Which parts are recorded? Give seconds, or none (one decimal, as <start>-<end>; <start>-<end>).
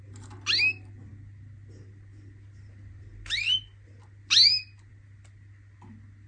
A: 0.0-6.3